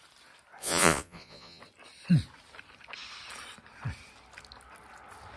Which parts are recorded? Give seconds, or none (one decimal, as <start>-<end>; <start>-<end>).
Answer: 0.0-0.6; 1.6-5.4